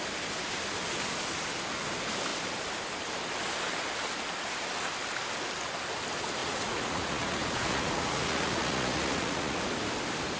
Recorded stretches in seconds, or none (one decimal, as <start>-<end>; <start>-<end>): 0.0-6.4; 9.6-10.4